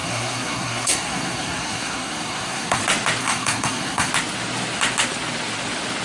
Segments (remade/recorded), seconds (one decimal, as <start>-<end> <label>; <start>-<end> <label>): 0.0-2.8 remade; 2.8-3.2 recorded; 3.2-4.1 remade; 4.1-6.0 recorded